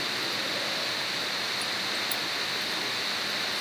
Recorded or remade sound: recorded